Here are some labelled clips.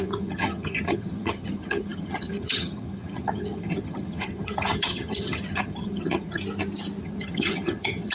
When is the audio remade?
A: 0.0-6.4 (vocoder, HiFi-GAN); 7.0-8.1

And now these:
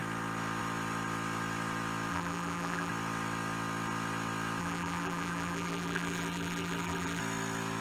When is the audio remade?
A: 2.1-2.9 (vocoder, BigVGAN v2); 4.6-7.2

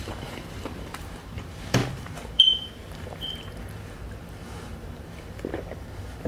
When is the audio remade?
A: 0.0-6.3 (vocoder, BigVGAN v2)

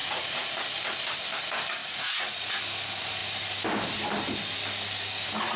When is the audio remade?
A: 0.0-0.5 (vocoder, Vocos); 1.8-2.6

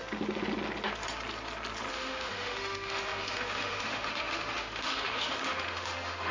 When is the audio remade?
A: 1.9-6.3 (autoencoder, DAC-VAE)